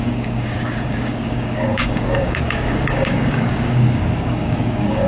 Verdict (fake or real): fake